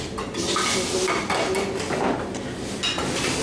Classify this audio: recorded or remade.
recorded